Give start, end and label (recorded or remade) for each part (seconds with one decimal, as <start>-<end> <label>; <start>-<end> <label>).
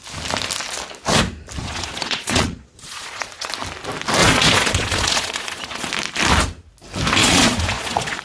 0.0-1.6 recorded; 1.6-3.5 remade; 3.5-4.2 recorded; 4.2-5.9 remade; 5.9-7.2 recorded; 7.2-8.2 remade